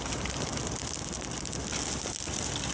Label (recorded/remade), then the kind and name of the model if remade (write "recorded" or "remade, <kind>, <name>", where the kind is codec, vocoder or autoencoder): remade, vocoder, BigVGAN v2